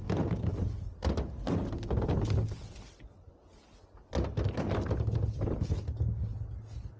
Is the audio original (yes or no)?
yes